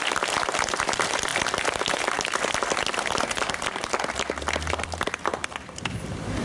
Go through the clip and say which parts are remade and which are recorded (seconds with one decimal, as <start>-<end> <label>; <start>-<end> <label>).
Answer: 0.0-6.4 recorded